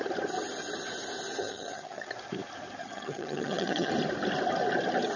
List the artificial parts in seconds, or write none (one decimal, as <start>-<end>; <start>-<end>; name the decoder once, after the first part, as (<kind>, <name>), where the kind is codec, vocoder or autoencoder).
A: 1.4-2.1 (vocoder, HiFi-GAN); 2.8-3.9